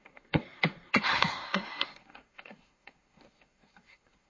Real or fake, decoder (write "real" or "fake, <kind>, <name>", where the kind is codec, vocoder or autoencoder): fake, codec, SNAC